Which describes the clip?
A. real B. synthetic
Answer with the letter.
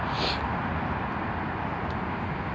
A